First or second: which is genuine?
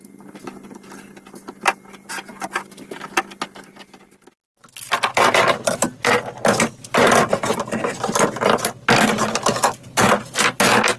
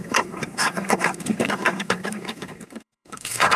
first